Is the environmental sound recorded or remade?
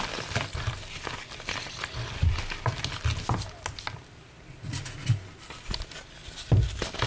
recorded